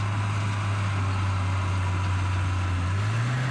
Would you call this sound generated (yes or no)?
no